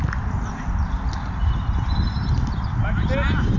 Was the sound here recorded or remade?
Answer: recorded